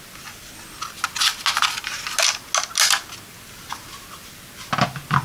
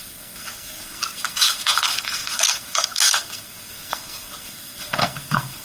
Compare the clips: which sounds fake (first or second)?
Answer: second